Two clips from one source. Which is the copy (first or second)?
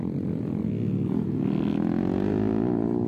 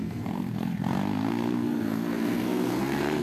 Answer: second